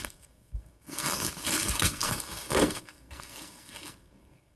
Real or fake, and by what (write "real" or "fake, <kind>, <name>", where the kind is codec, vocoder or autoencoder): fake, codec, SNAC